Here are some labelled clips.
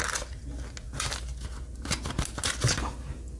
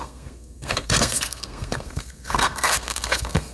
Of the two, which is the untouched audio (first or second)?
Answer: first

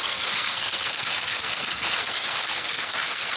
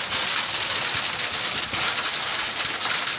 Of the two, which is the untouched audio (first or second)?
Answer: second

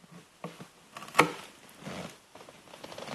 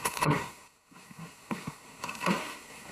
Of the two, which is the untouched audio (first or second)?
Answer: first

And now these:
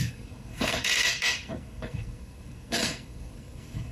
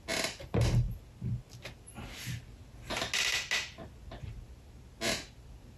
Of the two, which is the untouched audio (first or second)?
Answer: second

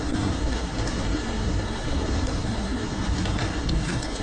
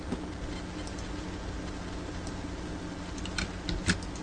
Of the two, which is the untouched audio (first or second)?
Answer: second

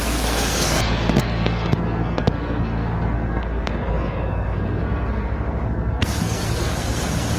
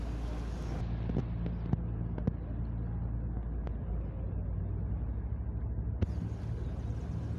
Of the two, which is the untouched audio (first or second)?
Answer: second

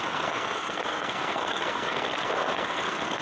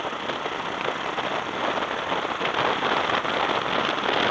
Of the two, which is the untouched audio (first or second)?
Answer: second